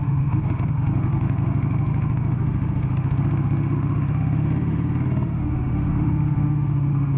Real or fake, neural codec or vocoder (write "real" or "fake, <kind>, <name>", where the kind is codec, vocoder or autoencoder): fake, autoencoder, DAC-VAE